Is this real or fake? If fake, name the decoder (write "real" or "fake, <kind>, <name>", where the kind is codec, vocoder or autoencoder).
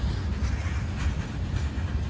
real